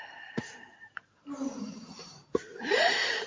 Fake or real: fake